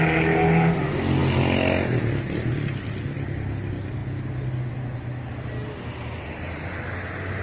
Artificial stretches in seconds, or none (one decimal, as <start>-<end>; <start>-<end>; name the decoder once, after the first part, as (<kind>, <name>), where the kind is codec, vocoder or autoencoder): none